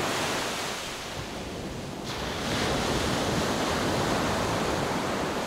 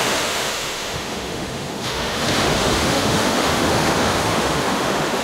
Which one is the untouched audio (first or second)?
first